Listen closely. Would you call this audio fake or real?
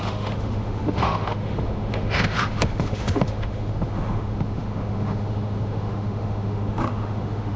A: fake